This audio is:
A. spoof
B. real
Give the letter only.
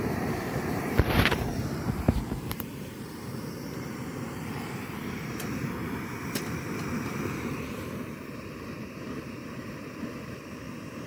A